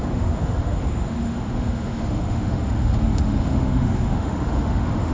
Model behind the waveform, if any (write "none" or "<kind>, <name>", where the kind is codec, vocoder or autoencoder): autoencoder, DAC-VAE